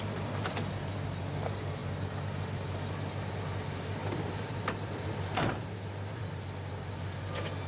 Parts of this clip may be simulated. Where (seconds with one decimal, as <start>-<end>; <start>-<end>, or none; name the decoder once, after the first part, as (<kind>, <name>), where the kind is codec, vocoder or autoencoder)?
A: 4.0-6.2 (vocoder, BigVGAN v2)